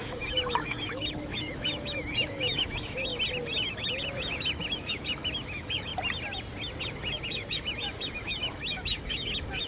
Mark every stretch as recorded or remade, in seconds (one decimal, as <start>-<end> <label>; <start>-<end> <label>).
0.0-3.1 remade; 3.1-3.7 recorded; 3.7-5.9 remade; 5.9-6.8 recorded; 6.8-9.7 remade